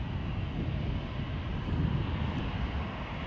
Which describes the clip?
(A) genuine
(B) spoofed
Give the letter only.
A